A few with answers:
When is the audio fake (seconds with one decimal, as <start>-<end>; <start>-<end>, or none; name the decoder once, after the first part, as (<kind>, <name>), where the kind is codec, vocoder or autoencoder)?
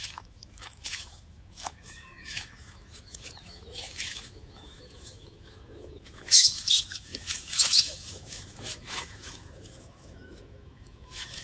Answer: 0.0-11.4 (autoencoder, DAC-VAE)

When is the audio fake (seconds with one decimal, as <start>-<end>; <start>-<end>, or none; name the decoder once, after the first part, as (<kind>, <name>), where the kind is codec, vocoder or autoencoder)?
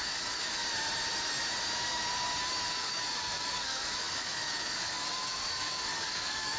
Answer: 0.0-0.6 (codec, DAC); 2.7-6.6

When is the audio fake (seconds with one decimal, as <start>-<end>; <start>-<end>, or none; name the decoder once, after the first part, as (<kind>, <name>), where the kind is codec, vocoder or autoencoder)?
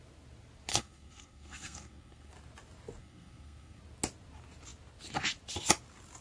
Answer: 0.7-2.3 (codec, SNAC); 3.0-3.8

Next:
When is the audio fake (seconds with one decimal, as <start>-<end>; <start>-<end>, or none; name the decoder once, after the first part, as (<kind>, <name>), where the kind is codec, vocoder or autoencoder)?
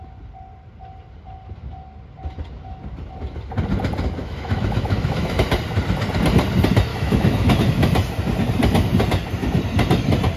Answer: 4.2-5.4 (autoencoder, DAC-VAE); 6.9-7.6